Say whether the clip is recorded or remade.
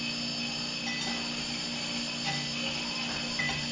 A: recorded